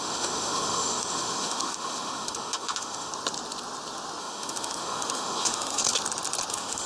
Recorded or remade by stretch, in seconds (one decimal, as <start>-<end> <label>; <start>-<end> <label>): 0.0-3.1 remade; 3.1-4.2 recorded; 4.2-5.8 remade; 5.8-6.5 recorded; 6.5-6.9 remade